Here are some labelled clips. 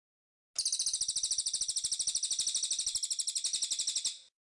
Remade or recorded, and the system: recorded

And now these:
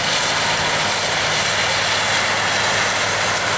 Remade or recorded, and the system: recorded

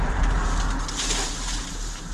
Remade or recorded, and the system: remade, vocoder, BigVGAN v2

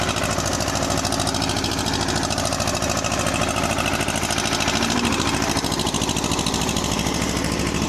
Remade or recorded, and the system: recorded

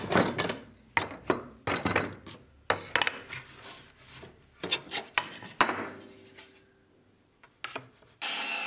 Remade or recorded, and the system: recorded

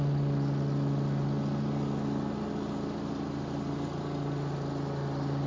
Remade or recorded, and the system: recorded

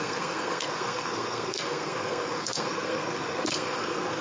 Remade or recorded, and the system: remade, codec, SNAC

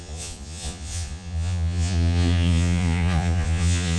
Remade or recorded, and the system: remade, vocoder, Vocos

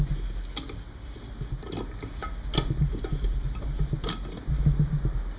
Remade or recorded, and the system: recorded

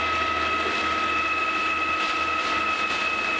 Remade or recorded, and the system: recorded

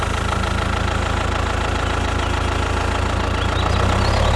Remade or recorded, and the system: recorded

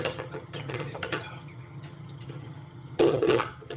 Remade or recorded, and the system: remade, vocoder, HiFi-GAN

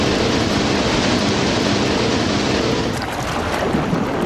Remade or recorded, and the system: recorded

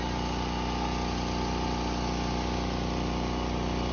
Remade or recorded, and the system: recorded